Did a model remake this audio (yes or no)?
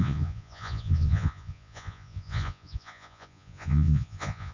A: yes